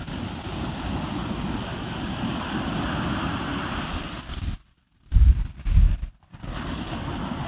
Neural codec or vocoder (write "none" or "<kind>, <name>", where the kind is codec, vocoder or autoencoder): none